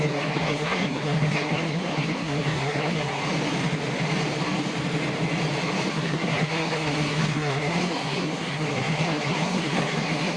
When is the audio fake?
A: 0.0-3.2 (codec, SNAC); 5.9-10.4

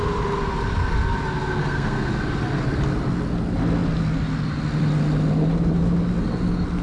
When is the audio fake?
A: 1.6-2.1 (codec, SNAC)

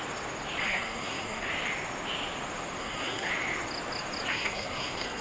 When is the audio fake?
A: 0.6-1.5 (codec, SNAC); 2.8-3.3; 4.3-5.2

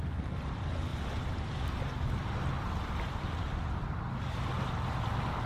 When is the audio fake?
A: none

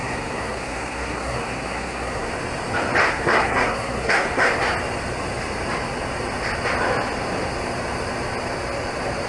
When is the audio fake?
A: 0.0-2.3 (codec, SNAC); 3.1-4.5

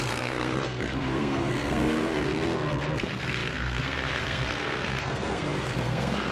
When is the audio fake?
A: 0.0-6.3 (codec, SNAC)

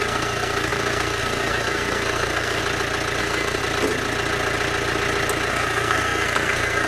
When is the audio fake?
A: 0.0-2.6 (codec, SNAC); 3.2-3.6; 5.5-6.9